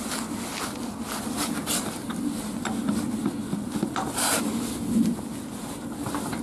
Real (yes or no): yes